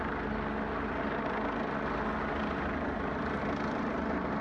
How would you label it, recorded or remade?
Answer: recorded